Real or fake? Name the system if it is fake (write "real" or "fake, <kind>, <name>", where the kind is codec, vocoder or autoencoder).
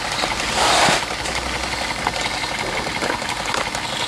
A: real